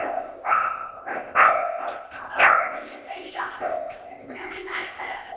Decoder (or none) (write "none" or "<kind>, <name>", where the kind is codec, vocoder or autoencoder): codec, ZipCodec